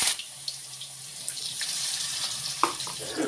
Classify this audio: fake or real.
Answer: fake